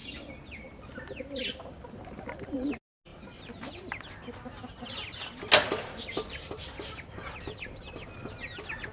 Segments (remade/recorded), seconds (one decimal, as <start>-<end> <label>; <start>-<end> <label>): 0.0-8.9 recorded